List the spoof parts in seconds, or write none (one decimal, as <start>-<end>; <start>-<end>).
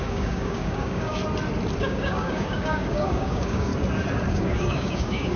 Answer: 0.0-1.2; 1.8-3.7; 4.3-5.4